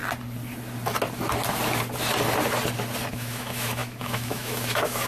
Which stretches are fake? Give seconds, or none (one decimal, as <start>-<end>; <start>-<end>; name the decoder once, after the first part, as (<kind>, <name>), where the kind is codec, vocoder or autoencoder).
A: 3.1-5.1 (autoencoder, DAC-VAE)